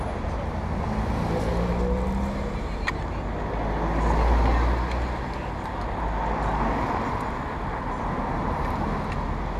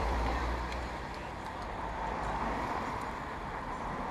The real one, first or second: first